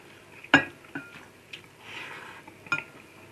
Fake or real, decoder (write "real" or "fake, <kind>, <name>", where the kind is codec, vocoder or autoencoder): real